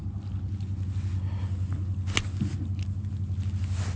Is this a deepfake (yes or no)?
no